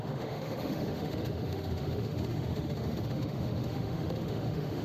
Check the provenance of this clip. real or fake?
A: fake